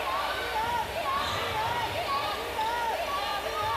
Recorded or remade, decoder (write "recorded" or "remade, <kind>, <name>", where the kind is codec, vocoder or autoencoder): recorded